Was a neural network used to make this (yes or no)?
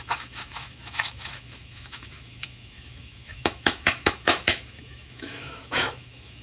yes